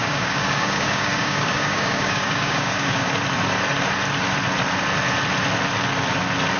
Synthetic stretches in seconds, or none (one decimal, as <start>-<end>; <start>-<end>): 0.0-3.1